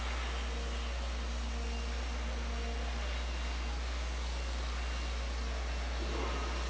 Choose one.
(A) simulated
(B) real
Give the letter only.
B